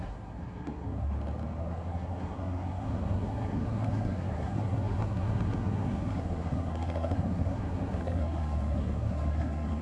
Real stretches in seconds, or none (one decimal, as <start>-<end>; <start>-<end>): 1.1-1.6